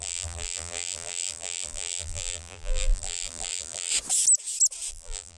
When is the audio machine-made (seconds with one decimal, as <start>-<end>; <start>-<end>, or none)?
0.0-3.9; 4.9-5.4